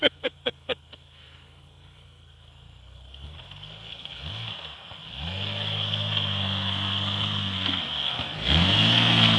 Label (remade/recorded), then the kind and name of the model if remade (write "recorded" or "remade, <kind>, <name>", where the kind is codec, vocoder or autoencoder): remade, codec, SNAC